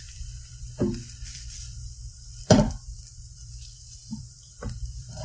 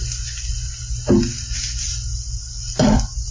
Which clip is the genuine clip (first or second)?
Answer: second